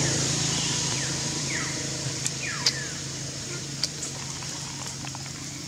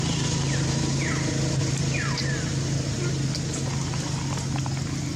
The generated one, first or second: first